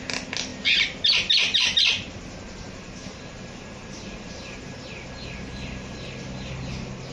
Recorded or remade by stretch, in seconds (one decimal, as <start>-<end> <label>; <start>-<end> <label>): 0.0-7.1 recorded

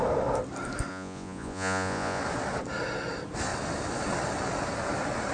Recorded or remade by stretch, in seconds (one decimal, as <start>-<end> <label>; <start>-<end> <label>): 0.0-0.9 recorded; 0.9-2.2 remade; 2.2-5.3 recorded